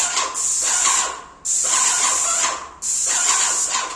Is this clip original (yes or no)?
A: yes